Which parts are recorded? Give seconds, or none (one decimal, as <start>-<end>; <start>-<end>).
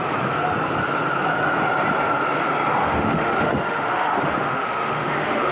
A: 0.0-2.8